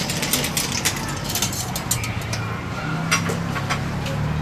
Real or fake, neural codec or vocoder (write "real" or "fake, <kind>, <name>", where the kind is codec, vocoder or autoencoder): real